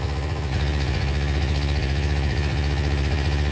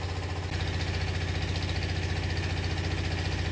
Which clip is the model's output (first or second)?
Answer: first